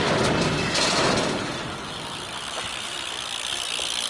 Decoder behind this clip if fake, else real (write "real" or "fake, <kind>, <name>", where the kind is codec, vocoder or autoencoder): real